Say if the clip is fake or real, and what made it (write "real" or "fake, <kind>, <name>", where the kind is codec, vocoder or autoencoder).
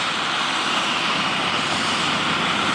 fake, vocoder, BigVGAN v2